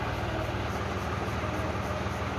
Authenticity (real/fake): real